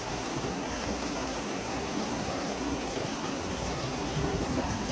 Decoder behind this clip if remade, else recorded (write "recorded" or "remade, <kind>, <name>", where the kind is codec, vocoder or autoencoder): remade, codec, SNAC